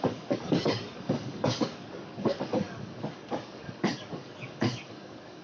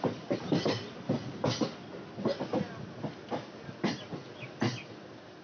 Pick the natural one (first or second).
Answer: second